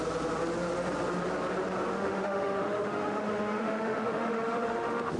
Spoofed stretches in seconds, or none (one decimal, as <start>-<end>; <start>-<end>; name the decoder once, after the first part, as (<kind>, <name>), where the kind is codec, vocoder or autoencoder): 1.9-5.2 (autoencoder, DAC-VAE)

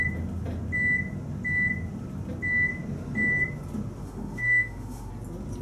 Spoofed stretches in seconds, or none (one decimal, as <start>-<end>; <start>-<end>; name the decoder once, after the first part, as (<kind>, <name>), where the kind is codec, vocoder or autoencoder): 4.0-5.1 (autoencoder, DAC-VAE)

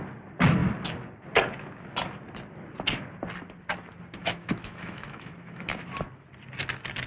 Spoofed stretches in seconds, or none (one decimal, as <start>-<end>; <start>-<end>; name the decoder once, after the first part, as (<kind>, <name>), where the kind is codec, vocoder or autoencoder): 4.2-5.8 (autoencoder, DAC-VAE)

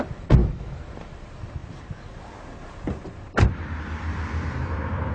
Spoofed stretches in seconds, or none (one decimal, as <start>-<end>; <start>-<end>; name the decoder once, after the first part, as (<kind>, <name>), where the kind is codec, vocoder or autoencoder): 0.4-0.9 (autoencoder, DAC-VAE)

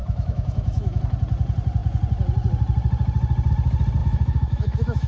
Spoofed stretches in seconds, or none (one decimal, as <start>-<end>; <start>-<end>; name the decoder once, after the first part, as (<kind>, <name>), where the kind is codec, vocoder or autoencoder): 0.0-1.0 (autoencoder, DAC-VAE); 4.0-5.1